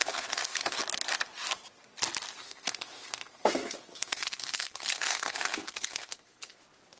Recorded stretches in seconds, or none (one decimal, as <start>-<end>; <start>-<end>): 0.8-2.4; 6.6-7.0